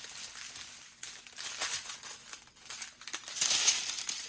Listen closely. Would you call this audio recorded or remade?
recorded